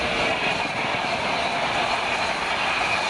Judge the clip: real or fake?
real